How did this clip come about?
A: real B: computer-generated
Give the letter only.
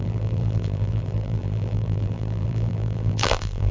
B